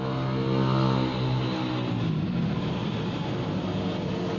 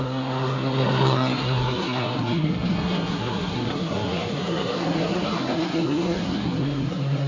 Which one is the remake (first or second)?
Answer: second